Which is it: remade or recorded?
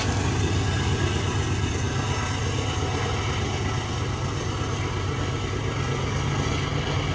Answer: recorded